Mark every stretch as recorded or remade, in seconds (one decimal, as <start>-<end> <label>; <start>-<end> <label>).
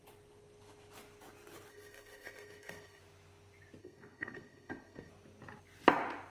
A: 0.0-1.7 recorded; 1.7-3.0 remade; 3.0-3.8 recorded; 3.8-5.1 remade; 5.1-6.3 recorded